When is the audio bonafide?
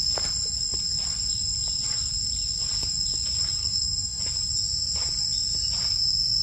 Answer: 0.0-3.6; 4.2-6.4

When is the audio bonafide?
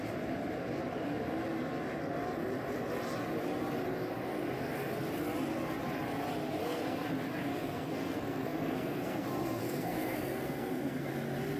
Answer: 0.0-6.6; 7.1-7.5; 11.1-11.6